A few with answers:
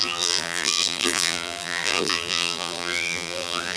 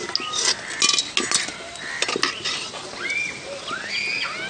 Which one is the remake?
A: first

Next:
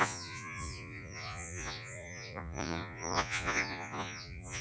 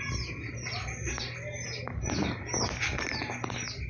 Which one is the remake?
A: first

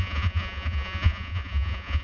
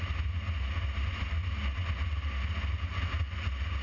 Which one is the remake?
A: first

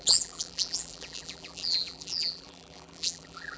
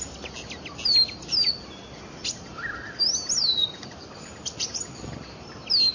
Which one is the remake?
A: first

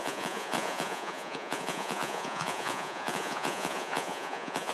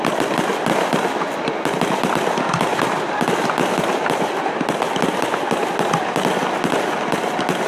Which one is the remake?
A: first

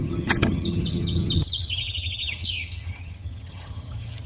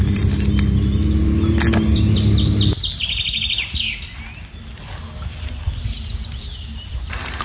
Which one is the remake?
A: first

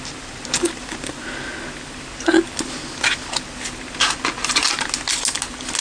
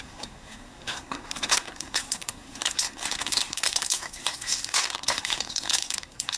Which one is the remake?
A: second